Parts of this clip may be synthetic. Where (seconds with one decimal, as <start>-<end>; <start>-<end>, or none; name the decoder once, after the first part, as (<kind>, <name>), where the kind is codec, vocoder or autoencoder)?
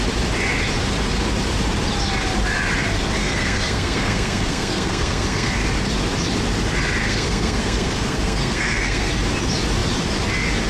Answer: 3.2-5.5 (codec, SNAC); 7.0-9.1